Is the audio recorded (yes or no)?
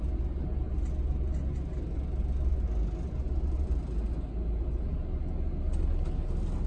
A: yes